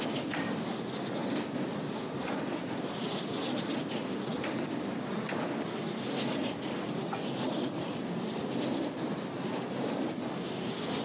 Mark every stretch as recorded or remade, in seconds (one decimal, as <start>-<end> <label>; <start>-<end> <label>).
0.0-11.0 recorded

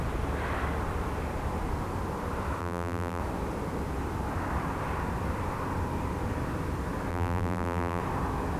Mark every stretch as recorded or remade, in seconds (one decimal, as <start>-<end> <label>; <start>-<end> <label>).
0.0-2.6 recorded; 2.6-3.2 remade; 3.2-7.1 recorded; 7.1-8.0 remade; 8.0-8.6 recorded

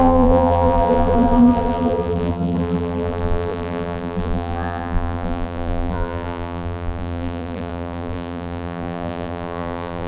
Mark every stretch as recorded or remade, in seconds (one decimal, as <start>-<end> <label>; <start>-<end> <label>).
0.0-10.1 remade

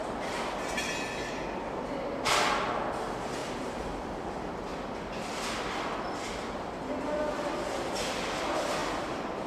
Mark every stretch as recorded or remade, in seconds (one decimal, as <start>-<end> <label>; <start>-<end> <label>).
0.0-3.4 recorded; 3.4-5.0 remade; 5.0-8.8 recorded; 8.8-9.5 remade